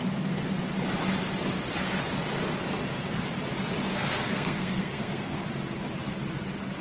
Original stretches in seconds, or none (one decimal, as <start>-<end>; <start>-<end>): 0.0-3.9; 5.4-6.8